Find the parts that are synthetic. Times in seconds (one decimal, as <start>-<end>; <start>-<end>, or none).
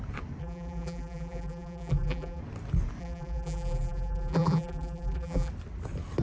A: 0.4-2.4; 3.0-5.5